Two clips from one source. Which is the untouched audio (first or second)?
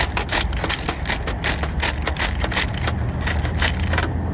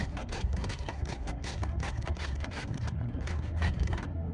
first